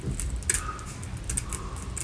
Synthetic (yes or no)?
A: no